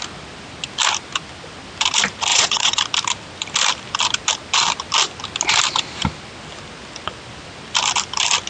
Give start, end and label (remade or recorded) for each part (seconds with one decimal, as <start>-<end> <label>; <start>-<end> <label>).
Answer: 0.0-2.3 recorded; 2.3-2.8 remade; 2.8-8.5 recorded